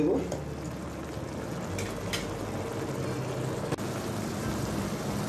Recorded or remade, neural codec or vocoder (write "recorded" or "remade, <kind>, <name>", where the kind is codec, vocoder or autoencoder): recorded